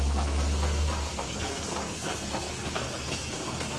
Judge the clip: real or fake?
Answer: fake